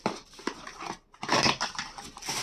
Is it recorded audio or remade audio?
recorded